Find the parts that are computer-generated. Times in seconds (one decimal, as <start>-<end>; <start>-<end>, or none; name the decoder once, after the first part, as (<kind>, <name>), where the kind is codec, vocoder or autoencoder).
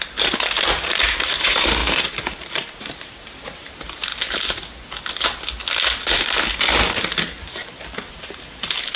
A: 0.0-4.1 (vocoder, BigVGAN v2); 8.1-9.0